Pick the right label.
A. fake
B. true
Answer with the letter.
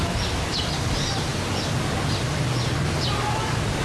B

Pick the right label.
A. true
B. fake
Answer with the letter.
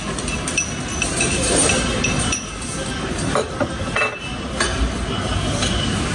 A